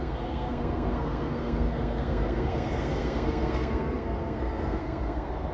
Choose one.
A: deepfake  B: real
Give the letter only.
A